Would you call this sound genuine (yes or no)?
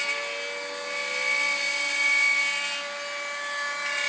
yes